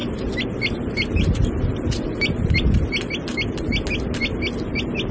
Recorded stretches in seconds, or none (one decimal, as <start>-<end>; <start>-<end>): 3.1-5.1